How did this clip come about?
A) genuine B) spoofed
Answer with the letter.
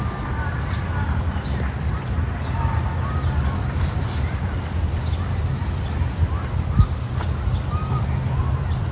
A